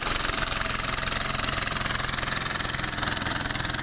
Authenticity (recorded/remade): remade